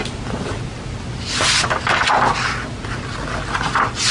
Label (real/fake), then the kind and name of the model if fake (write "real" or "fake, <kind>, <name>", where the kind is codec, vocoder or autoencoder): real